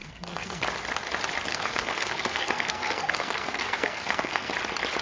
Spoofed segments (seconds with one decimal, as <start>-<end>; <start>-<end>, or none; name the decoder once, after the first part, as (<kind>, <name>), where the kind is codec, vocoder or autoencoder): 0.0-0.6 (codec, SNAC); 1.5-4.5